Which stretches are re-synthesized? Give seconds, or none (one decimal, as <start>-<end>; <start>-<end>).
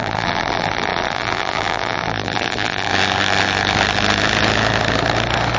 0.0-2.9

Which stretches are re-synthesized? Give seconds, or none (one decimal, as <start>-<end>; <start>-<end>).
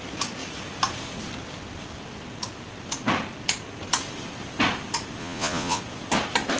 5.2-5.8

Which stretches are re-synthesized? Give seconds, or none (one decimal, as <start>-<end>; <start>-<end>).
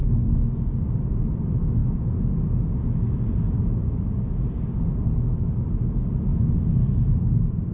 0.0-0.9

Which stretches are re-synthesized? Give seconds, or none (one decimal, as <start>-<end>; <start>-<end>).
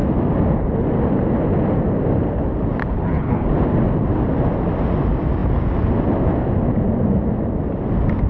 2.8-3.5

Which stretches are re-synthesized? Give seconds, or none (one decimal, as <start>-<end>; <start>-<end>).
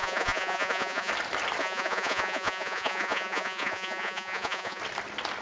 0.0-1.1; 1.6-4.8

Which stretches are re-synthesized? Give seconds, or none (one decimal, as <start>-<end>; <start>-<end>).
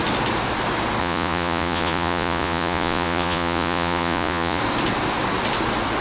1.0-4.6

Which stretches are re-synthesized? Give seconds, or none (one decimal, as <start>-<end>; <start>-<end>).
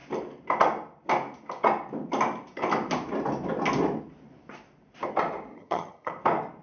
5.5-6.1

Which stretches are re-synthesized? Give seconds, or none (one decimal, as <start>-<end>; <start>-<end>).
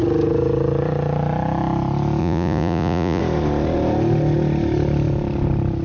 2.2-3.2